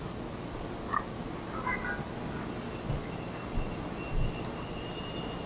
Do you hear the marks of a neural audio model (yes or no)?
no